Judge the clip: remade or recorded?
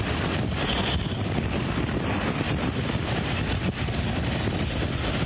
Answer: remade